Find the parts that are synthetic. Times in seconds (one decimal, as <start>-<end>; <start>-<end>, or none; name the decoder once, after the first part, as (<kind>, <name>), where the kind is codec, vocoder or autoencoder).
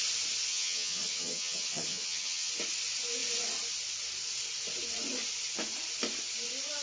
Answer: 0.5-2.5 (vocoder, HiFi-GAN)